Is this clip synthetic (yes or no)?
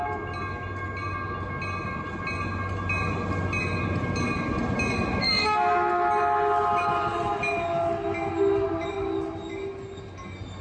no